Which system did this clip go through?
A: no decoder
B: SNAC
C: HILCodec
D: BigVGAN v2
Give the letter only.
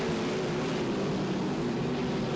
A